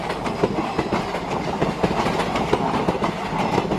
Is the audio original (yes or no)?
yes